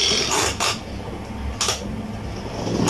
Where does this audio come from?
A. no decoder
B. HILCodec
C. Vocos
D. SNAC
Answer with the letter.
A